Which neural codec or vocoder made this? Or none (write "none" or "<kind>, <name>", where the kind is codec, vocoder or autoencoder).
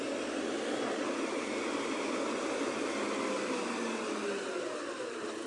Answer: none